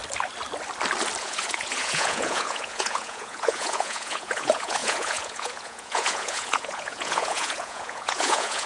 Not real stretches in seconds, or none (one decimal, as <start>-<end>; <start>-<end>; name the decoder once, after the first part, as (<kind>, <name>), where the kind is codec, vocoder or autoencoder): 1.2-8.7 (vocoder, Vocos)